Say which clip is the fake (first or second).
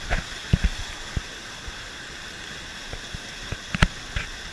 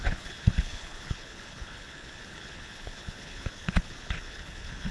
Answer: second